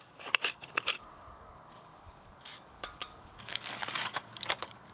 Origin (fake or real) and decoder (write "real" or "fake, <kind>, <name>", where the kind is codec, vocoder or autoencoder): fake, codec, DAC